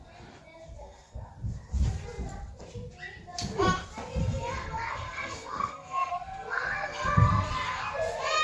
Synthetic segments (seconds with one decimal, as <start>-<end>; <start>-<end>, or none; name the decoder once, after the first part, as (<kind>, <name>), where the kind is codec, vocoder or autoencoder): 0.8-1.3 (codec, SNAC); 4.2-7.8